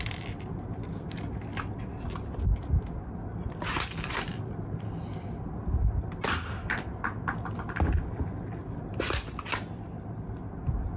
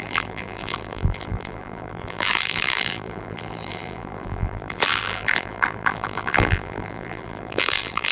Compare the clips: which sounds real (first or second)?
first